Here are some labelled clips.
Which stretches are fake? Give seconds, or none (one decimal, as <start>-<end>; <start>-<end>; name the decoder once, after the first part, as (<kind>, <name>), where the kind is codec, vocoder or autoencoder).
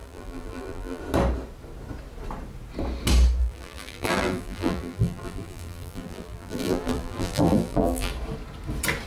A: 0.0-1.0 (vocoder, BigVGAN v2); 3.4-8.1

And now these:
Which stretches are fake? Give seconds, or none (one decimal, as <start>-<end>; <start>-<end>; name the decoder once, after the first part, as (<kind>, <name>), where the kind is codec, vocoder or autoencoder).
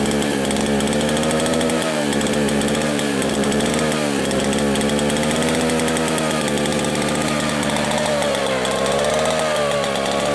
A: 1.5-3.7 (vocoder, BigVGAN v2); 6.7-8.4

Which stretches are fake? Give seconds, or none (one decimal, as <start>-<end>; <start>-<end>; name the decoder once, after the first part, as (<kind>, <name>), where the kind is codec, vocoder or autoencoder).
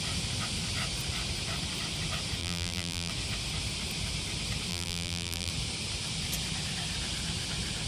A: 2.4-3.1 (vocoder, BigVGAN v2); 4.7-5.5